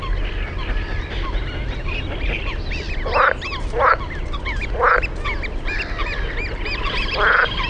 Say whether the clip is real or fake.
real